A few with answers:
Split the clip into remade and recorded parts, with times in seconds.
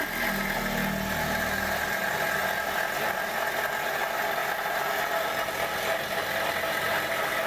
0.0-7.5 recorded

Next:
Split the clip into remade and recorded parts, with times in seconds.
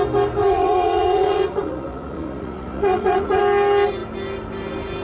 0.0-0.4 recorded; 0.4-3.4 remade; 3.4-5.0 recorded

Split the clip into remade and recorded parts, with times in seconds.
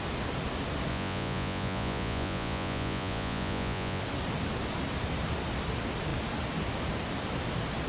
0.0-0.9 recorded; 0.9-4.0 remade; 4.0-7.9 recorded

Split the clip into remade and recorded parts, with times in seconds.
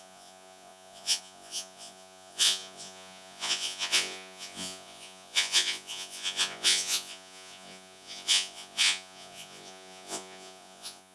0.0-11.1 remade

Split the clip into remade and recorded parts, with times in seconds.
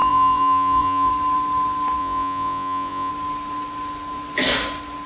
0.0-1.1 remade; 1.1-2.0 recorded; 2.0-3.1 remade; 3.1-5.1 recorded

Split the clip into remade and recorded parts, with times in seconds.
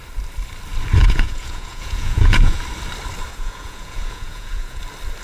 0.0-1.0 recorded; 1.0-2.6 remade; 2.6-3.3 recorded; 3.3-4.8 remade; 4.8-5.2 recorded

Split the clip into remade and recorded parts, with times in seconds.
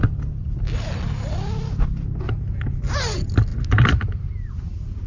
0.0-5.1 recorded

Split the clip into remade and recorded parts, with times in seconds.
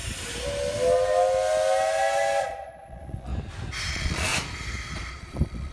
0.0-2.4 recorded; 2.4-3.3 remade; 3.3-3.9 recorded; 3.9-4.3 remade; 4.3-5.1 recorded; 5.1-5.7 remade